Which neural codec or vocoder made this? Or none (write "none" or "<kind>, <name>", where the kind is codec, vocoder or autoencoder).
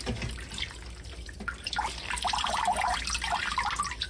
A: none